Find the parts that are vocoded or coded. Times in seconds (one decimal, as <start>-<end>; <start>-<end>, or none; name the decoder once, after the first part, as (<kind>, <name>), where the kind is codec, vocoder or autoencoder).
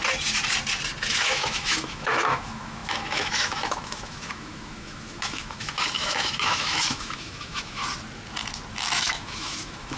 1.1-7.8 (autoencoder, DAC-VAE); 8.8-10.0